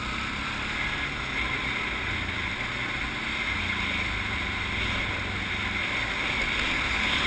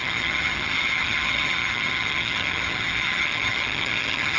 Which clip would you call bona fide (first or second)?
first